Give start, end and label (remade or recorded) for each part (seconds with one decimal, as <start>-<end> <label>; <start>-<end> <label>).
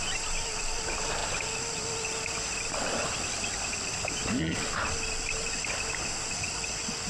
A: 0.0-7.1 recorded